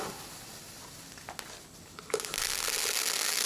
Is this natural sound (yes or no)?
yes